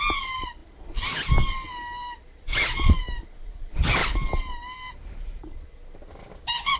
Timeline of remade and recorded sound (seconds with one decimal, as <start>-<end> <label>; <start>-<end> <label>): 0.0-0.6 remade; 0.6-2.6 recorded; 2.6-4.0 remade; 4.0-6.1 recorded; 6.1-6.8 remade